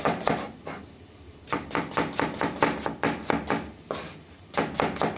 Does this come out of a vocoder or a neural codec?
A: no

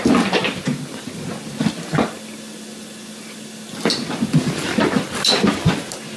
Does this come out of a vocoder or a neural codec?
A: no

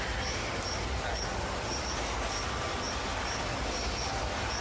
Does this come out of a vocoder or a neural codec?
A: no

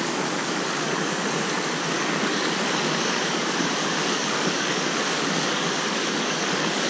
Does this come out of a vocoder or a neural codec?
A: yes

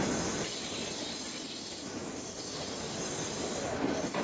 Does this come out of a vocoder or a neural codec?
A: no